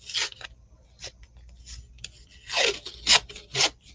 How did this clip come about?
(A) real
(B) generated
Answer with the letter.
A